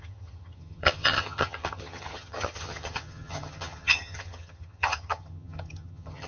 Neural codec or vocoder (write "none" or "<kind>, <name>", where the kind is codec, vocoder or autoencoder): vocoder, HiFi-GAN